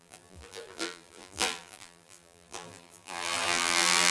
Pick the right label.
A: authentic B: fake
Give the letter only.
B